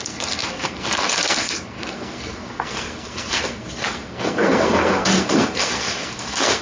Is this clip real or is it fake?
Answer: fake